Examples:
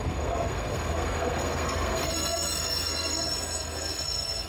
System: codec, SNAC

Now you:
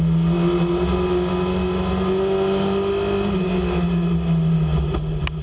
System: none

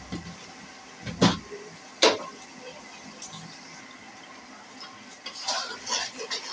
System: none